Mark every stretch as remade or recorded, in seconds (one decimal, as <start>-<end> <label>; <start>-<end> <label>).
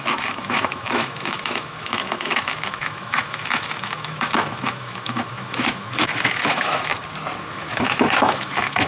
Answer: 0.0-6.9 remade; 6.9-7.5 recorded; 7.5-8.9 remade